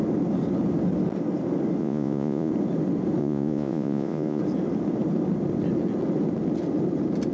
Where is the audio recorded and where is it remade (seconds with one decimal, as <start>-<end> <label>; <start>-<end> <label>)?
0.0-1.8 recorded; 1.8-2.5 remade; 2.5-3.2 recorded; 3.2-4.4 remade; 4.4-7.3 recorded